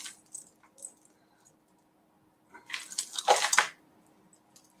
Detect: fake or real real